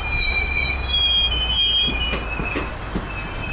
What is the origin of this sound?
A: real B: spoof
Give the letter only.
A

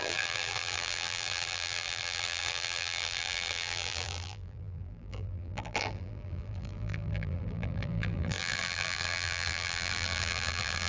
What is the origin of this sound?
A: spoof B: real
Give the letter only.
A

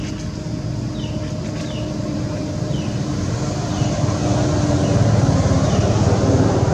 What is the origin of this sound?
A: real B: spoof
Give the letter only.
A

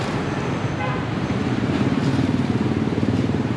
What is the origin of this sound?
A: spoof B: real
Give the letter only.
A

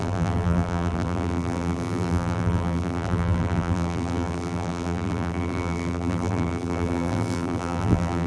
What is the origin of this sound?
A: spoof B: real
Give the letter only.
A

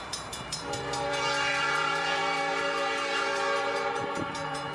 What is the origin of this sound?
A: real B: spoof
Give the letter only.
B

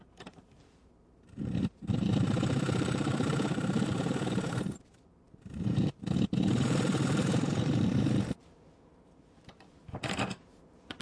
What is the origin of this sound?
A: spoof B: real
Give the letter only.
A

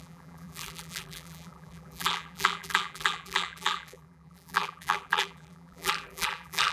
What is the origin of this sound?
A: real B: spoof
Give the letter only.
B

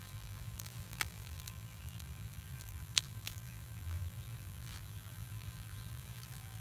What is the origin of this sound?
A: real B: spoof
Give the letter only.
B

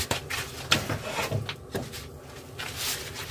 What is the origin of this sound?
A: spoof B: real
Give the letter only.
B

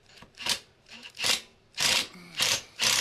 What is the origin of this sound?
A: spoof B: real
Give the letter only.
A